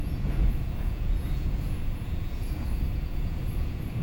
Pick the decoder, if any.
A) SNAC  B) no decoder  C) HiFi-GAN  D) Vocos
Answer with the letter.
D